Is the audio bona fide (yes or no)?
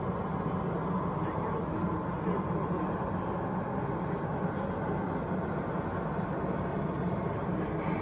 yes